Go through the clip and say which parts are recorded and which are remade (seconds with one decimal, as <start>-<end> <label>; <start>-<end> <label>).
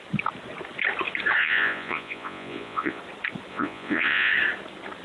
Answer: 0.0-1.4 recorded; 1.4-3.0 remade; 3.0-3.5 recorded; 3.5-4.3 remade; 4.3-5.0 recorded